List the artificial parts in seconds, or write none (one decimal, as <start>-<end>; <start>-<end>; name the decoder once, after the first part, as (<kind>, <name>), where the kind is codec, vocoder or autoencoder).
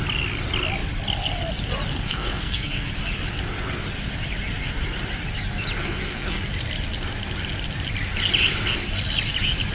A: 1.9-2.9 (codec, SNAC); 5.8-6.4